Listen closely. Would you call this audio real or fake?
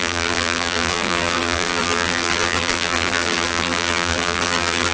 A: fake